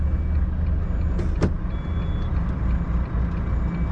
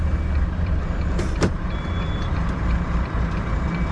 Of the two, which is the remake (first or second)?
second